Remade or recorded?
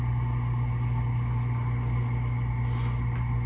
recorded